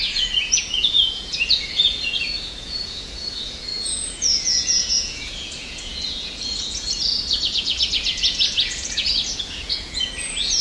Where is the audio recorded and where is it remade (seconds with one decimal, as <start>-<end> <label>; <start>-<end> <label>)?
0.0-10.6 remade